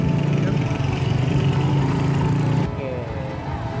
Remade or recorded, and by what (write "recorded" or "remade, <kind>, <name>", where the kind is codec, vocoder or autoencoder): recorded